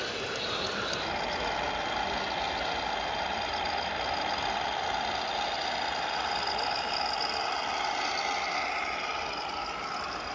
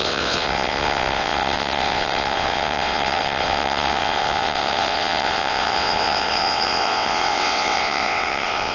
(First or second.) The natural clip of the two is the first